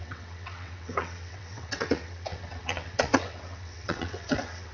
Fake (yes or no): yes